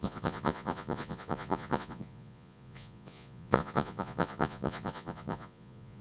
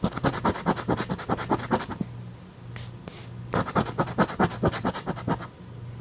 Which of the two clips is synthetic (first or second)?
first